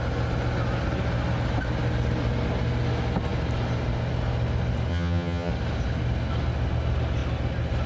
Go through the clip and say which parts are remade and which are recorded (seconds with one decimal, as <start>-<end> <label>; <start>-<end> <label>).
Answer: 0.0-4.9 recorded; 4.9-5.5 remade; 5.5-7.9 recorded